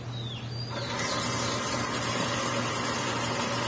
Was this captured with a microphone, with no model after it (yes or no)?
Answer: yes